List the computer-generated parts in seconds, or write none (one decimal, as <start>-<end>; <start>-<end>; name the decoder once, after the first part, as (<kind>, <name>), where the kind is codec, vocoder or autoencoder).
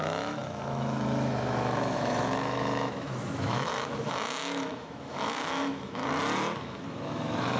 0.0-6.0 (autoencoder, DAC-VAE); 6.6-7.6